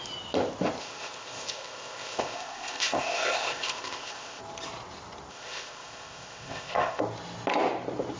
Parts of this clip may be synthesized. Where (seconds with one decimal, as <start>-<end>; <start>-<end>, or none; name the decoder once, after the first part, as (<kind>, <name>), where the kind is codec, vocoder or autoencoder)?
0.8-4.4 (codec, ZipCodec); 5.3-7.0